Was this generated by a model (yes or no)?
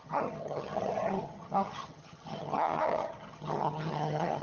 yes